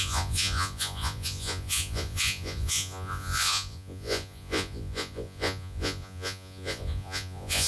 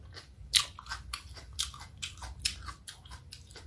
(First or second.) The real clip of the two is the second